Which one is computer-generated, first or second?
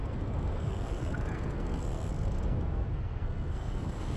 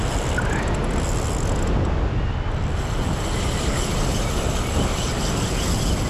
first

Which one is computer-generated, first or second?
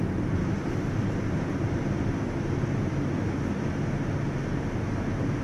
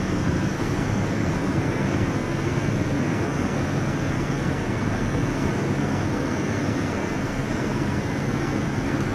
second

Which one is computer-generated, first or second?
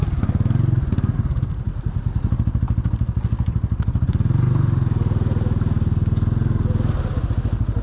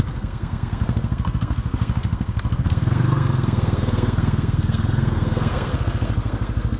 second